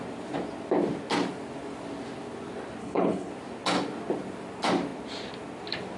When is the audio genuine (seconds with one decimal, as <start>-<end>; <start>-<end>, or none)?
0.0-2.8; 3.3-6.0